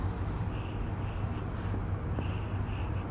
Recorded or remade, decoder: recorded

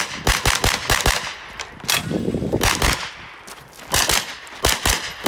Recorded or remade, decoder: recorded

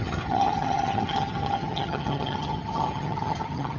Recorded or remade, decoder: remade, vocoder, HiFi-GAN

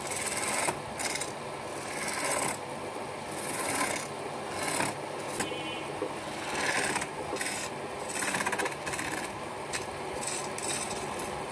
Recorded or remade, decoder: recorded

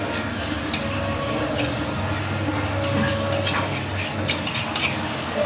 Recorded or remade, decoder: recorded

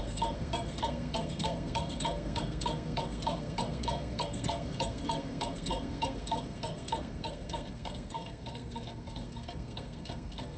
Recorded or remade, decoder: remade, codec, SNAC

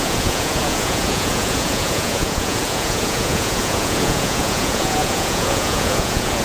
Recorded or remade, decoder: remade, vocoder, Vocos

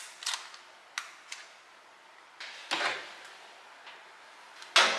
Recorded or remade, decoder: recorded